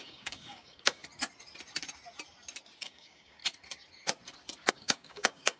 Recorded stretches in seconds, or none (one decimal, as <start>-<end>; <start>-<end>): 1.0-2.8; 3.4-4.7